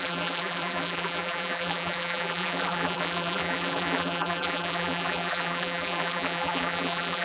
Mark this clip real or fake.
fake